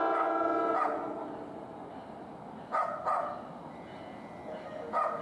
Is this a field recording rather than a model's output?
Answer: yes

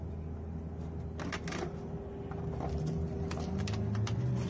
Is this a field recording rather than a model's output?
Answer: yes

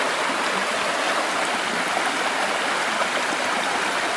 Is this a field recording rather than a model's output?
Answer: yes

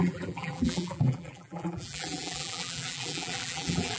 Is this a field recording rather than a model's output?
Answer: no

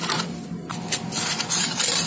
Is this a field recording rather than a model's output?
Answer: yes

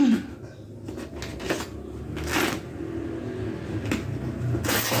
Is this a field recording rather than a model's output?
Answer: yes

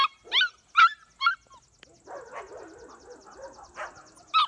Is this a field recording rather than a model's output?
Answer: yes